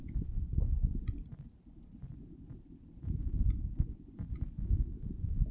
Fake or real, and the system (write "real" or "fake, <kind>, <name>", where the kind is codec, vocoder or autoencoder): fake, vocoder, BigVGAN v2